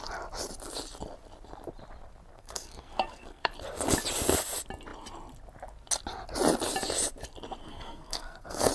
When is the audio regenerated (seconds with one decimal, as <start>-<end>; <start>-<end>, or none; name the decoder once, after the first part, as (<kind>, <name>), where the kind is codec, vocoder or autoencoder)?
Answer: 2.3-3.5 (codec, SNAC); 7.6-8.7